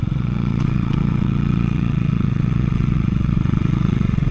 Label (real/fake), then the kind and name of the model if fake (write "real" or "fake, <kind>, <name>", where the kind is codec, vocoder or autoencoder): fake, vocoder, WaveNeXt